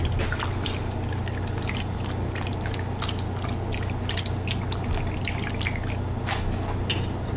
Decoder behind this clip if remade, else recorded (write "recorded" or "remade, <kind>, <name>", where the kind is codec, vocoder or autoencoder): recorded